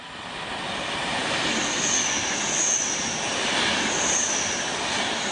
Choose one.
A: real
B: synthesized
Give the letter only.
A